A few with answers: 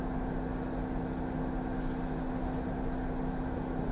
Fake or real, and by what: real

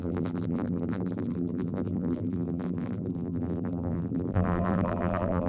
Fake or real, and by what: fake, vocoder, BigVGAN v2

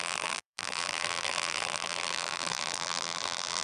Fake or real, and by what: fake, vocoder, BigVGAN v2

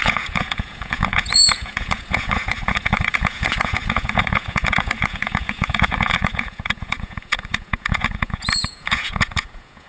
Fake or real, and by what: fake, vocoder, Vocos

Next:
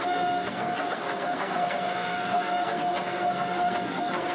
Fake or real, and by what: fake, codec, SNAC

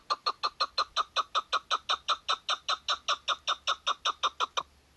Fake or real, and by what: real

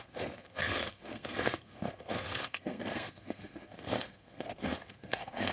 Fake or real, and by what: fake, codec, SNAC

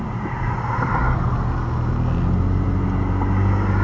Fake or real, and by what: real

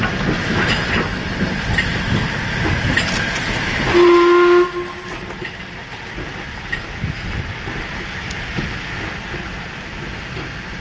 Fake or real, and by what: real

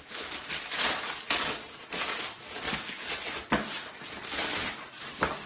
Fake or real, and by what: real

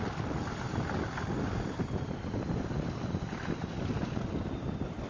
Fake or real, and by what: real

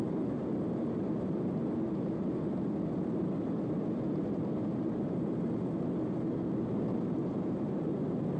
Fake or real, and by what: real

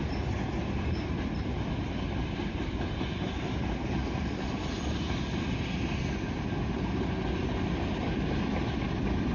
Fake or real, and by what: real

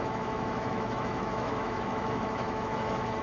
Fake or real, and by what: fake, autoencoder, DAC-VAE